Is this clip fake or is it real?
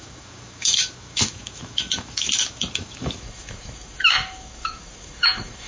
fake